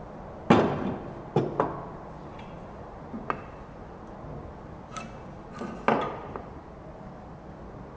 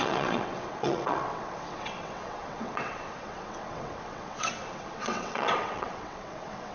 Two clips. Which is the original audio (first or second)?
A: first